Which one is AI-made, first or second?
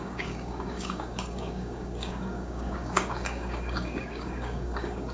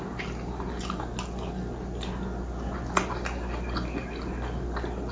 first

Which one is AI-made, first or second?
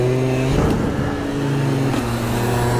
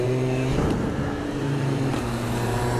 second